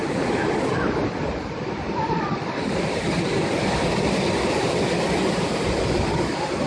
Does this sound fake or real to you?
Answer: fake